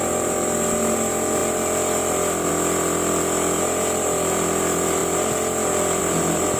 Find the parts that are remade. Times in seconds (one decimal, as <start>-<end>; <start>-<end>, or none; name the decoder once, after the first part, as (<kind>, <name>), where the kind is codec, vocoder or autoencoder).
none